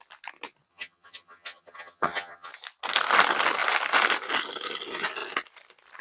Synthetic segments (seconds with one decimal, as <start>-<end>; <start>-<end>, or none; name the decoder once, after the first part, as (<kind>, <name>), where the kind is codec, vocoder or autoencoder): 0.7-2.5 (vocoder, HiFi-GAN)